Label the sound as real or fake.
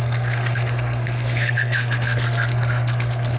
fake